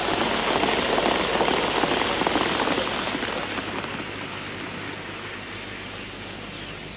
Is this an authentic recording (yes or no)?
yes